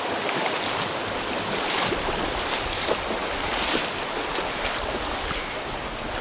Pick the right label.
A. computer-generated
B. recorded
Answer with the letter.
B